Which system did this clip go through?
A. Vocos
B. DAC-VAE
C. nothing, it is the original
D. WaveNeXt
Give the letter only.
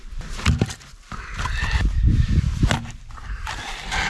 C